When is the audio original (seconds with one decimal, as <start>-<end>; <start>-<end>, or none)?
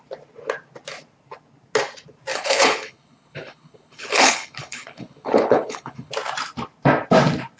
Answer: 0.0-2.3; 6.1-7.6